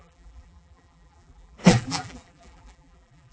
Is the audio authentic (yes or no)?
no